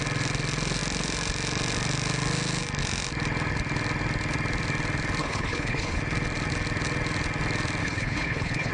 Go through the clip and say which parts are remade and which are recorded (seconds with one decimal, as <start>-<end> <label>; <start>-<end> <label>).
0.0-5.2 recorded; 5.2-6.0 remade; 6.0-7.8 recorded; 7.8-8.7 remade